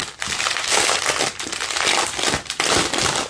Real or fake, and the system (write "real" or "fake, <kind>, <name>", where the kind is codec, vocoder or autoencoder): real